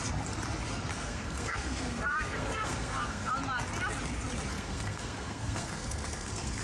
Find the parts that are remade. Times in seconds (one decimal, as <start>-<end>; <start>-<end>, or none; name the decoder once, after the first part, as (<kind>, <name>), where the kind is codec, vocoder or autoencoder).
0.9-3.3 (codec, SNAC); 4.5-6.6